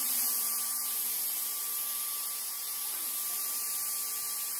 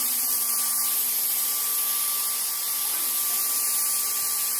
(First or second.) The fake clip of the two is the first